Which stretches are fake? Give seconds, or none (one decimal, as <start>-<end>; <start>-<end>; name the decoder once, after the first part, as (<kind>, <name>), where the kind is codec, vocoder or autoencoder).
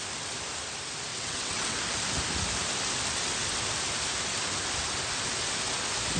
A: 1.1-1.8 (vocoder, WaveNeXt)